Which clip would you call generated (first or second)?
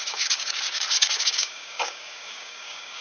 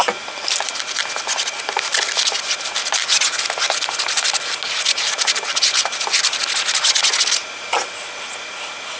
first